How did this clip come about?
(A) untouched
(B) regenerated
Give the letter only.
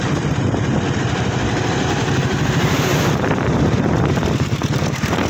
B